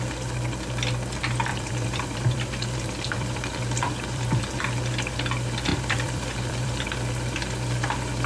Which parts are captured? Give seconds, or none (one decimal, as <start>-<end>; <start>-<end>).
0.0-1.5; 4.4-5.7; 6.8-8.3